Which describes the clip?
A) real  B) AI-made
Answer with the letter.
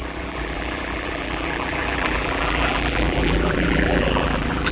B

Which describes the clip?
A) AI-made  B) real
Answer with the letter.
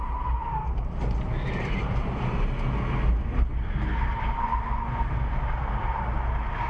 B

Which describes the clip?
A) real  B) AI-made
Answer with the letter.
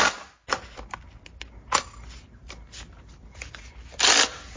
A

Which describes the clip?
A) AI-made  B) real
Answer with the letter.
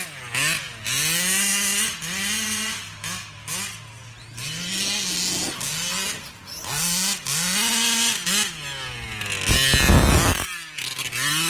B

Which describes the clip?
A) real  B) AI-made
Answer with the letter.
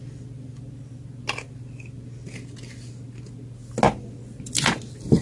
A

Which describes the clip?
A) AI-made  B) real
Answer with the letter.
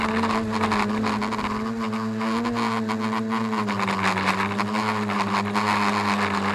B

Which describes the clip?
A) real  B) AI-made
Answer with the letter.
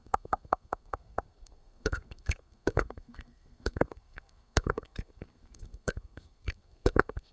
B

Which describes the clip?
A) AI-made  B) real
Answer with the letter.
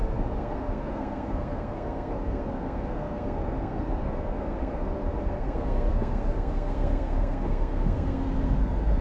A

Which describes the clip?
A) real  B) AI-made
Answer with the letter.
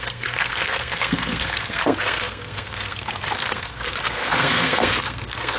B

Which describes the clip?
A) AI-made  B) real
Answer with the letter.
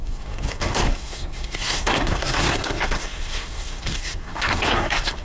A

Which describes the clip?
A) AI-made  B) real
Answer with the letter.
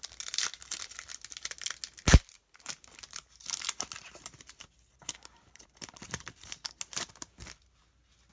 B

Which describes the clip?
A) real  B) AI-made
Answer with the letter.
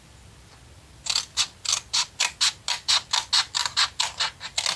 A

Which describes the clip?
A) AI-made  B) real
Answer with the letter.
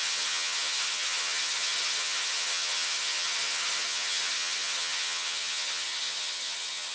A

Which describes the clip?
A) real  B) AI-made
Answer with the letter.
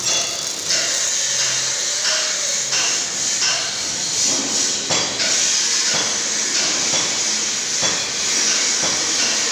A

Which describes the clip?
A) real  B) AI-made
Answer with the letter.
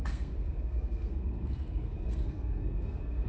B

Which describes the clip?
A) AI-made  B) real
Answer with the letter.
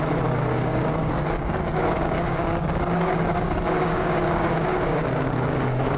A